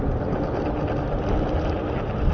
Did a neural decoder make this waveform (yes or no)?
no